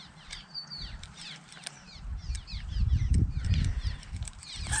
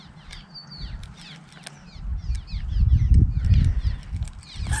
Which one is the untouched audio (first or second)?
second